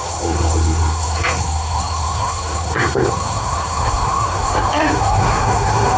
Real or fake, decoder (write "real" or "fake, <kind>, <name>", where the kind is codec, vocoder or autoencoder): fake, codec, SNAC